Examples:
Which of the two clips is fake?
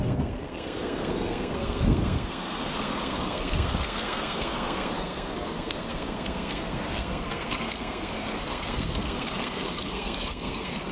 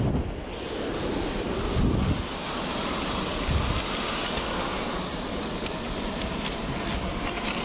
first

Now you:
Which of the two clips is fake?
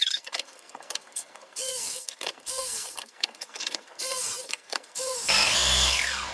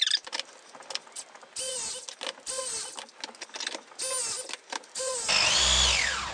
first